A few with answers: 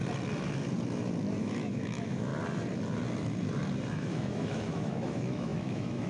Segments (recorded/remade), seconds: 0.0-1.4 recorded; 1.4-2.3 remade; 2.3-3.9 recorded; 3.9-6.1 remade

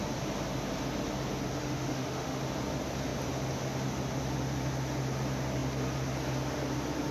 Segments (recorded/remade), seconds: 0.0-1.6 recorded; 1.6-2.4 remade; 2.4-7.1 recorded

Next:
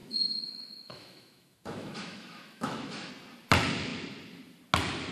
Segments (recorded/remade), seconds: 0.0-3.1 remade; 3.1-5.1 recorded